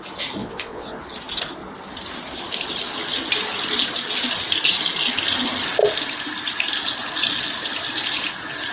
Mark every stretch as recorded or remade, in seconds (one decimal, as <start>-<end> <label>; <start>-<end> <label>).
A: 0.0-0.4 recorded; 0.4-1.0 remade; 1.0-8.7 recorded